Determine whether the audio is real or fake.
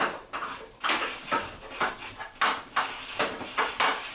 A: fake